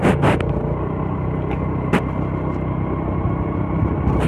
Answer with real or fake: real